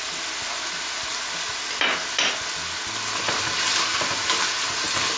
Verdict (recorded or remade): recorded